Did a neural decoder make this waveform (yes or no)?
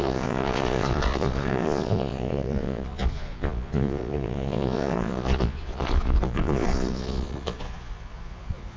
yes